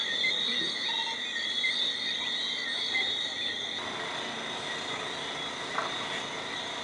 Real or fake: real